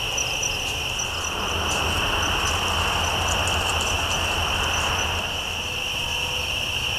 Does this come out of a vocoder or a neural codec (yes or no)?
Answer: no